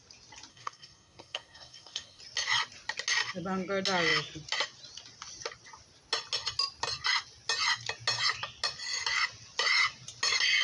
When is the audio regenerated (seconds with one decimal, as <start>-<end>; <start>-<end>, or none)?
0.5-2.2